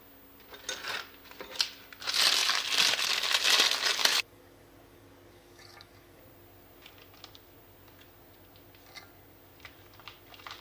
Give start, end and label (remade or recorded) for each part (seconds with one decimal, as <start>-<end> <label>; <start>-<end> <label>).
0.0-4.0 recorded; 4.0-6.2 remade; 6.2-10.6 recorded